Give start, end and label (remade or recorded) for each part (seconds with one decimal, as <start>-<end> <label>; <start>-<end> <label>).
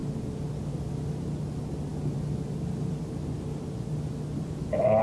0.0-5.0 recorded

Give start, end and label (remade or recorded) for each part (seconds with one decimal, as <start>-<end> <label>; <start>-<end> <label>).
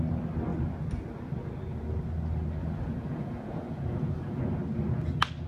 0.0-2.6 recorded; 2.6-4.4 remade; 4.4-5.5 recorded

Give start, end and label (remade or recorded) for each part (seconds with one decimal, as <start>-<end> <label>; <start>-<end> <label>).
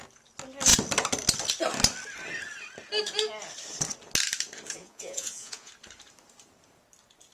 0.0-4.8 recorded; 4.8-5.7 remade; 5.7-7.3 recorded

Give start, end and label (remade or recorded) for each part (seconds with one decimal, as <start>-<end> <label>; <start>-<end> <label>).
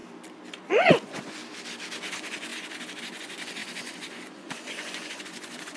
0.0-0.6 recorded; 0.6-1.4 remade; 1.4-2.0 recorded; 2.0-5.8 remade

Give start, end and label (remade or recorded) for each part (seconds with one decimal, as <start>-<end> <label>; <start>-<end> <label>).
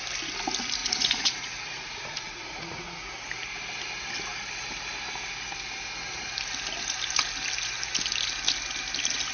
0.0-0.8 recorded; 0.8-3.2 remade; 3.2-9.3 recorded